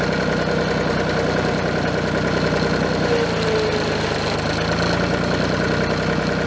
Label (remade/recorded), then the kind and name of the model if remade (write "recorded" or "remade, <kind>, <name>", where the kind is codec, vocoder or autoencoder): recorded